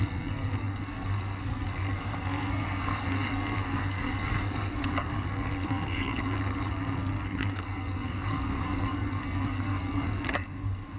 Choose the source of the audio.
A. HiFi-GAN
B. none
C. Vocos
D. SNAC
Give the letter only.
D